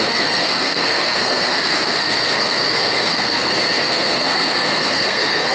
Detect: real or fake fake